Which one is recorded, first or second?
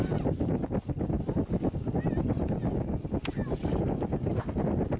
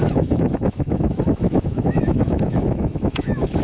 first